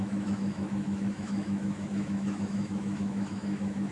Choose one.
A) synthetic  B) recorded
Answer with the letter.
A